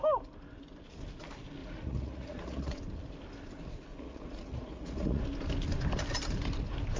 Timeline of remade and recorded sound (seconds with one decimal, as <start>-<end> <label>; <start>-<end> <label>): 0.0-1.6 recorded; 1.6-2.8 remade; 2.8-3.9 recorded; 3.9-5.2 remade; 5.2-7.0 recorded